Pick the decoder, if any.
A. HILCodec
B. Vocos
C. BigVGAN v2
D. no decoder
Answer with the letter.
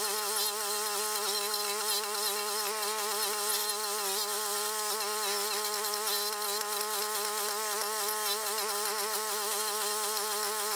D